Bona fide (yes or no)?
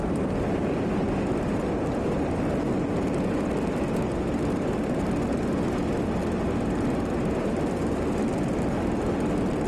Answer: yes